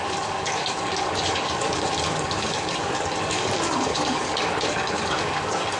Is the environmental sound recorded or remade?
remade